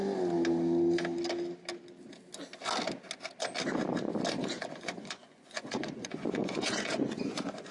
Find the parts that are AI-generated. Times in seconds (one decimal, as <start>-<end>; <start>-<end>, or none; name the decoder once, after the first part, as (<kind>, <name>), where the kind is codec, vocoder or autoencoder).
4.3-7.7 (vocoder, Vocos)